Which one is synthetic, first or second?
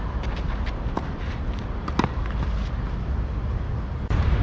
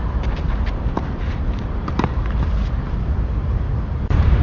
second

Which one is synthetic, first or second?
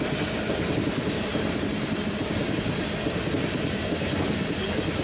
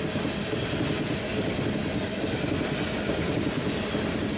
first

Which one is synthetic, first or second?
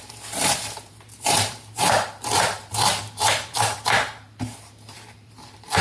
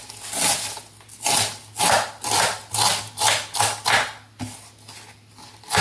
first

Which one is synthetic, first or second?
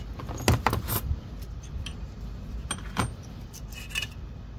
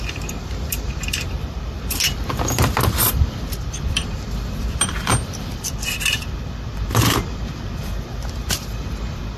second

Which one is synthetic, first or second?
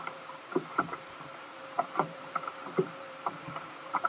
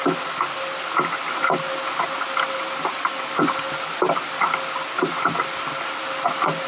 first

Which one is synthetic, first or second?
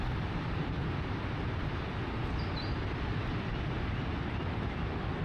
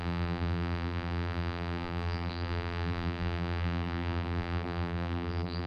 second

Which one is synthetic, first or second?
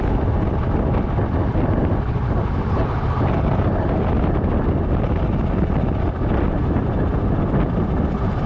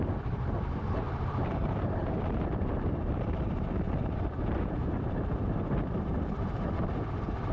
second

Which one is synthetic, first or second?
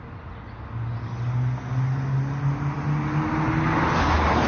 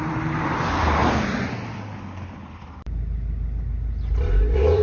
second